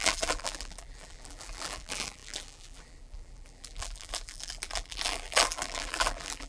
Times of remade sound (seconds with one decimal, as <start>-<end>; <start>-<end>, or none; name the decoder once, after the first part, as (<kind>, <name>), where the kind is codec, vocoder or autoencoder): 0.0-6.5 (vocoder, BigVGAN v2)